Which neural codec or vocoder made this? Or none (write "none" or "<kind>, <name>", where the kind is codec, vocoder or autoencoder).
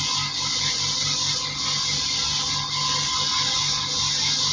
none